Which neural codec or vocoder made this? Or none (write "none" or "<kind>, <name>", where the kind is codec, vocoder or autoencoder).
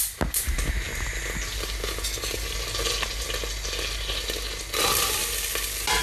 none